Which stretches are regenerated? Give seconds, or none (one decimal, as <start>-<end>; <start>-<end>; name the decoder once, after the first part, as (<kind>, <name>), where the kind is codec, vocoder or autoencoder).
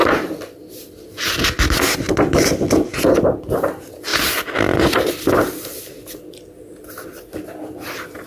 none